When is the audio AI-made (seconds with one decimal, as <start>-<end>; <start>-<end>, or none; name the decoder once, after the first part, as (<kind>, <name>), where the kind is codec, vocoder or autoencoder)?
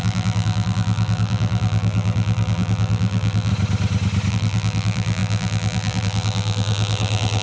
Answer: 0.0-3.5 (vocoder, BigVGAN v2); 4.3-7.4